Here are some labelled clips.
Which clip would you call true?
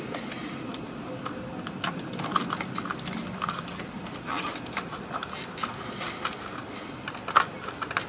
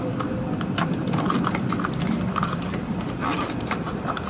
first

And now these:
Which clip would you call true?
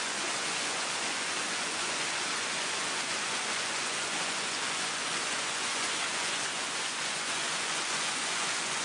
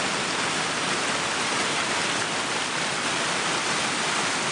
second